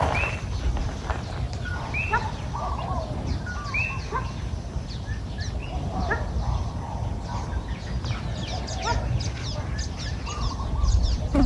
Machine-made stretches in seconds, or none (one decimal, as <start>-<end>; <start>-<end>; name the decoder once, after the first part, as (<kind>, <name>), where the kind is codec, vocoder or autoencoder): none